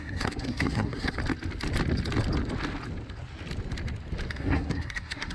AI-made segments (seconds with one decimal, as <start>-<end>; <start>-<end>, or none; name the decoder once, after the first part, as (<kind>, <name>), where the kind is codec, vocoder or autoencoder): 0.0-1.2 (codec, SNAC); 4.3-5.3